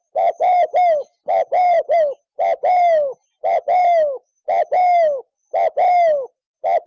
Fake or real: real